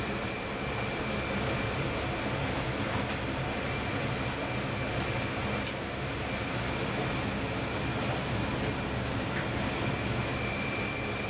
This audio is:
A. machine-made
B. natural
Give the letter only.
B